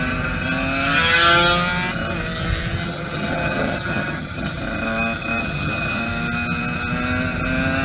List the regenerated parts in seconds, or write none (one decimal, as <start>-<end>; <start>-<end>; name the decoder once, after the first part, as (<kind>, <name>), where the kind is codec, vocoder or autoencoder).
2.8-4.6 (vocoder, HiFi-GAN); 5.4-6.0